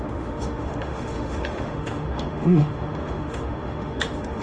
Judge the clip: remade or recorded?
remade